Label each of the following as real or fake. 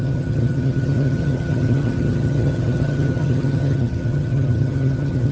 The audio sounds fake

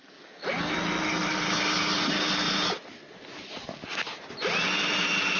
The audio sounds real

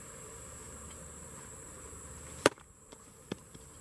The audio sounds fake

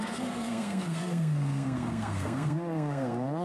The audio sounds fake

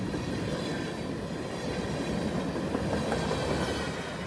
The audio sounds real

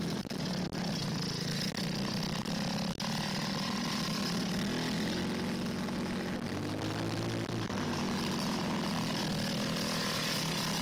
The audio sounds real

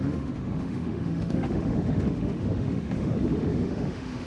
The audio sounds fake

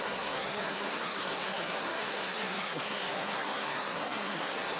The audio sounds fake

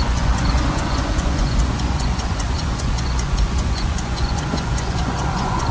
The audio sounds fake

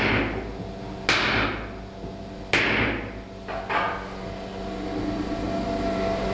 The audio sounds real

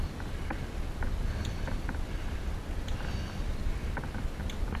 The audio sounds real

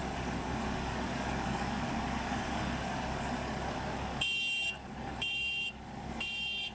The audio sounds fake